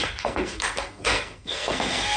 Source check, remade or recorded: remade